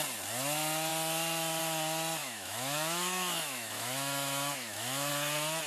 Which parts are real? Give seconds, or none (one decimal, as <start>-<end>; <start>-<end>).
0.0-2.2; 5.1-5.7